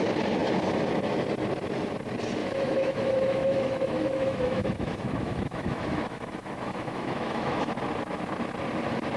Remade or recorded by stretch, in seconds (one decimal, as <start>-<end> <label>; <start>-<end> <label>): 0.0-2.4 recorded; 2.4-7.7 remade; 7.7-9.2 recorded